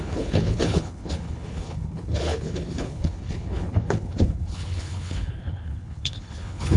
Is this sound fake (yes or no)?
yes